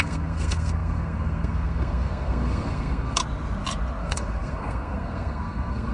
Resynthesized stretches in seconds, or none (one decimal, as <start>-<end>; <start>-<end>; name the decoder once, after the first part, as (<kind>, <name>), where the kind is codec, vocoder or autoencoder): 0.0-3.2 (codec, SNAC); 4.0-5.9